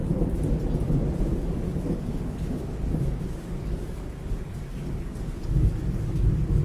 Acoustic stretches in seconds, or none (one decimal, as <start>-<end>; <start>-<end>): 0.0-1.2